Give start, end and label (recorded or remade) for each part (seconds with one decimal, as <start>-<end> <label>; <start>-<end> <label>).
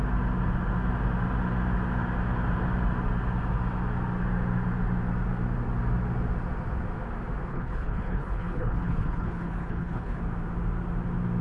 0.0-7.5 recorded; 7.5-10.2 remade; 10.2-11.4 recorded